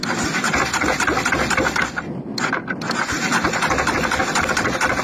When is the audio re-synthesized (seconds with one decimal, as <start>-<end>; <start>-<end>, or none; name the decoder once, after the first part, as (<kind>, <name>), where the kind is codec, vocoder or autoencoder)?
none